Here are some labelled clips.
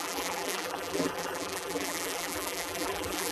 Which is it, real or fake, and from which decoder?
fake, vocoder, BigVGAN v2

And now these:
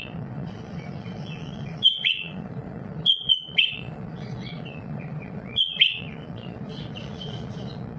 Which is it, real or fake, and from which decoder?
fake, vocoder, Vocos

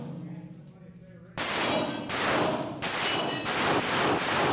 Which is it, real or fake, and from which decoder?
real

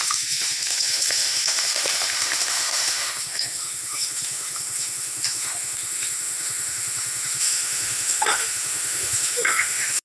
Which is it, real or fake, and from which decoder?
fake, autoencoder, DAC-VAE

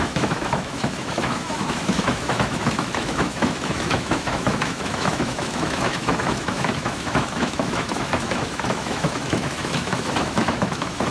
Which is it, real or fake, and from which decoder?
fake, autoencoder, DAC-VAE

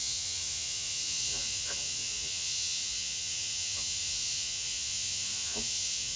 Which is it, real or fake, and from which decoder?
fake, vocoder, Vocos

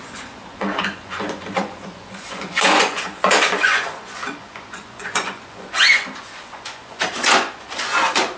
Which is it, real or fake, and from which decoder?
fake, vocoder, Vocos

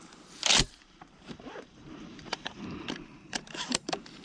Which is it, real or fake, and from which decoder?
fake, vocoder, BigVGAN v2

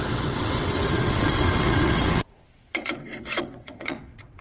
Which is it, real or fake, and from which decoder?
fake, vocoder, WaveNeXt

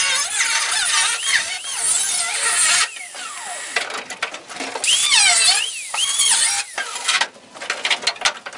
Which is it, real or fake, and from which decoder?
real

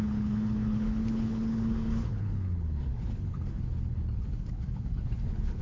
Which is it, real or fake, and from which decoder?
fake, codec, HILCodec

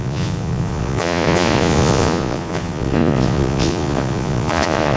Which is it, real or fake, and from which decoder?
fake, vocoder, Vocos